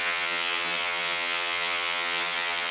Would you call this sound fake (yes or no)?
yes